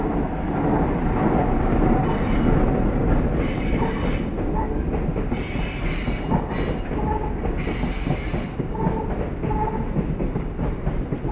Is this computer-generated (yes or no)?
no